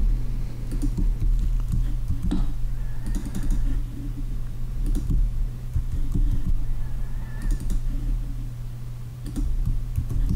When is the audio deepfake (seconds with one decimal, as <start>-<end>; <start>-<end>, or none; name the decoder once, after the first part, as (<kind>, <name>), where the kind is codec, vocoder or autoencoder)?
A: 3.2-8.0 (vocoder, BigVGAN v2); 9.1-9.8